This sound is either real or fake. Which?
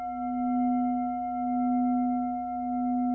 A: real